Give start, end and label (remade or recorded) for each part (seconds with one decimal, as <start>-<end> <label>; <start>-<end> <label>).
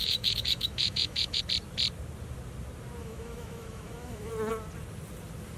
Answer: 0.0-1.4 remade; 1.4-3.0 recorded; 3.0-4.3 remade; 4.3-5.6 recorded